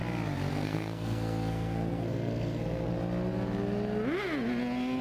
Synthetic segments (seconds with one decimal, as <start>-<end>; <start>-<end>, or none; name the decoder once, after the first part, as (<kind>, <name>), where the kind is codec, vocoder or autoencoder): 0.5-2.9 (codec, SNAC)